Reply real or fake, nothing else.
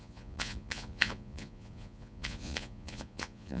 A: fake